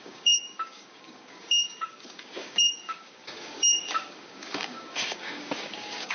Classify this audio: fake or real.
fake